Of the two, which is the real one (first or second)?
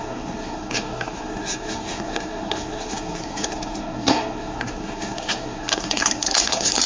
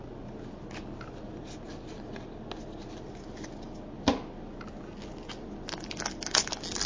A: second